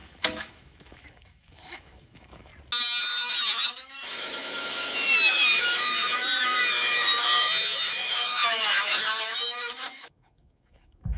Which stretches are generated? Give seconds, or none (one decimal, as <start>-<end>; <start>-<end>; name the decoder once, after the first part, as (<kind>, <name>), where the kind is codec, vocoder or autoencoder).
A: 0.0-2.5 (autoencoder, DAC-VAE); 3.0-11.2

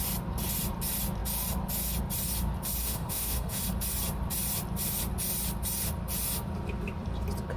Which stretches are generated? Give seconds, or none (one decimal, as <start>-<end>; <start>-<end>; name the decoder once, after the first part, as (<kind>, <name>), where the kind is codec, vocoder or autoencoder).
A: 2.8-3.6 (autoencoder, DAC-VAE)

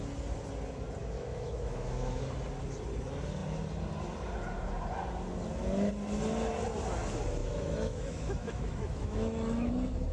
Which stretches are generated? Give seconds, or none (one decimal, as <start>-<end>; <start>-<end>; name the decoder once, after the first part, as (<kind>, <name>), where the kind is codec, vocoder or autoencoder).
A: 1.0-2.2 (autoencoder, DAC-VAE); 7.4-9.7

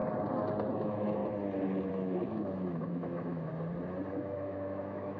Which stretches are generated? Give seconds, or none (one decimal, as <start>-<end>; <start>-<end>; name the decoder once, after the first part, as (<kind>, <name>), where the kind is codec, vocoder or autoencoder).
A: 0.7-1.2 (autoencoder, DAC-VAE); 1.9-3.5; 4.1-5.2